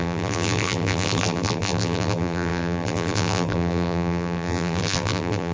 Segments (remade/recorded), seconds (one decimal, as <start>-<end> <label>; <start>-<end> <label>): 0.0-5.5 remade